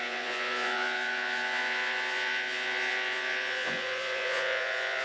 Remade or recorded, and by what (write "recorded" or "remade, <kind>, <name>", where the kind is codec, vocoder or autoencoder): remade, vocoder, Vocos